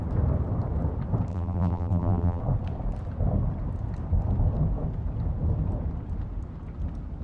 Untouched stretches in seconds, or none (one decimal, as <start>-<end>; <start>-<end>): 0.0-1.3; 2.4-7.2

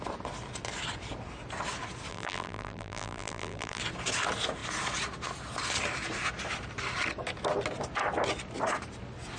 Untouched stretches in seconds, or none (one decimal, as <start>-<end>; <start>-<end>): 0.0-2.1; 3.8-9.4

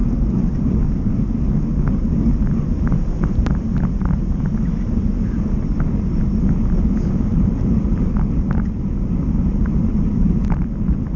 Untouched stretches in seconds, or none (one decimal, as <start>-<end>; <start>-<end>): 0.0-7.3; 8.0-9.8; 10.4-11.2

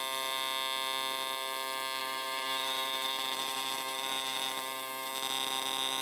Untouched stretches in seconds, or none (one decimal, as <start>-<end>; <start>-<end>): 0.0-2.0; 5.1-6.0

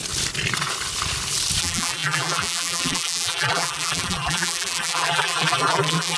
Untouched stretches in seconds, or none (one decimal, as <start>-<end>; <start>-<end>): 0.0-1.6